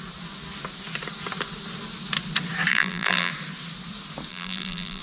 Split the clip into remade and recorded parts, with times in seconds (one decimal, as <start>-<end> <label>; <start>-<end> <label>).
0.0-2.7 recorded; 2.7-3.3 remade; 3.3-4.3 recorded; 4.3-5.0 remade